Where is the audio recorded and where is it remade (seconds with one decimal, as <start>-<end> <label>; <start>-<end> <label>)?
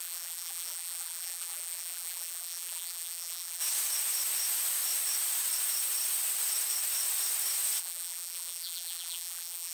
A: 0.0-3.6 remade; 3.6-7.8 recorded; 7.8-9.7 remade